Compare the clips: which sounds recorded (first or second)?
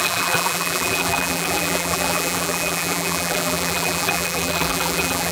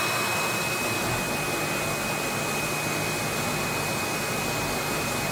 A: second